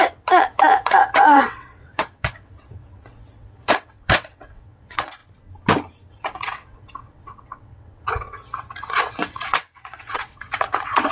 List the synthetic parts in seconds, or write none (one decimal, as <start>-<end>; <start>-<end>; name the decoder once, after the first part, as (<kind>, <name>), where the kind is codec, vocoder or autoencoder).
0.0-5.2 (vocoder, WaveNeXt); 6.1-11.1

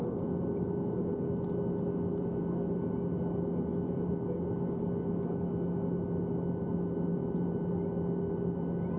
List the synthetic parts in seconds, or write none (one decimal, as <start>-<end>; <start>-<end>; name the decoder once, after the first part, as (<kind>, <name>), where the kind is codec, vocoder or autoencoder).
none

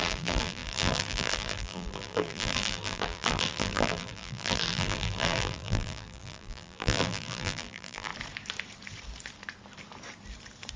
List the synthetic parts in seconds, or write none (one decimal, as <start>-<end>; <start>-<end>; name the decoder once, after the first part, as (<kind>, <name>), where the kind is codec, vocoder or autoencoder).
0.0-8.1 (vocoder, BigVGAN v2)